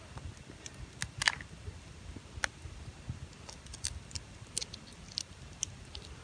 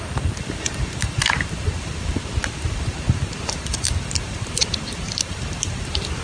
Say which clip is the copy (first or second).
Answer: second